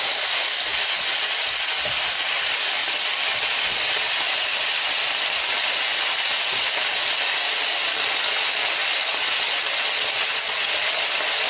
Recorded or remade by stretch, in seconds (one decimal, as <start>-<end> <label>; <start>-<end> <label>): 0.0-11.5 recorded